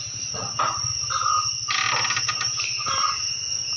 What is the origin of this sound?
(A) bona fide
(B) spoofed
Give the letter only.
A